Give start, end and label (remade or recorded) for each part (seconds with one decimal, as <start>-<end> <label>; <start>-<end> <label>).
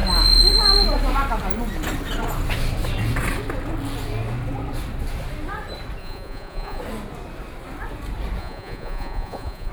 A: 0.0-6.0 recorded; 6.0-6.8 remade; 6.8-8.4 recorded; 8.4-9.7 remade